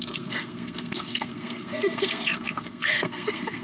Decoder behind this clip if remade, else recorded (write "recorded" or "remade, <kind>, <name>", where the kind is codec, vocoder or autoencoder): remade, codec, SNAC